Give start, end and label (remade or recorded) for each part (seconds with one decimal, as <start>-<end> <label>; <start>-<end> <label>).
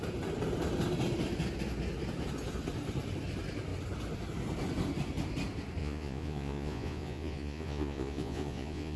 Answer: 0.0-5.8 recorded; 5.8-9.0 remade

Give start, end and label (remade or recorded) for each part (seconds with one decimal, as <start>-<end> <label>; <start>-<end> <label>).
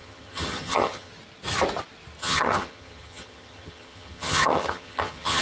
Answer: 0.0-1.1 remade; 1.1-2.2 recorded; 2.2-5.4 remade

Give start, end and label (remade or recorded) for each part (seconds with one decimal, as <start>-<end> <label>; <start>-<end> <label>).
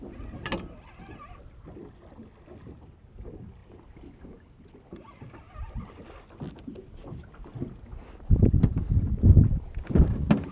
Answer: 0.0-10.5 recorded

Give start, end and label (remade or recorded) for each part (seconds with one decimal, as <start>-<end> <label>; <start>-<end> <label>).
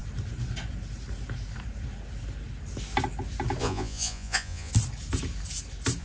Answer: 0.0-3.6 recorded; 3.6-4.7 remade; 4.7-6.0 recorded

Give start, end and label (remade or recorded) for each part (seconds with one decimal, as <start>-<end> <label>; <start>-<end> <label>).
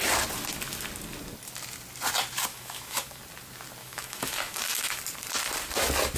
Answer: 0.0-2.5 recorded; 2.5-3.2 remade; 3.2-3.8 recorded; 3.8-5.0 remade; 5.0-6.2 recorded